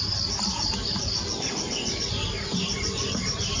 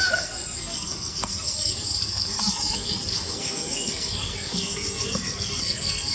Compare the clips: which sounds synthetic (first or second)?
second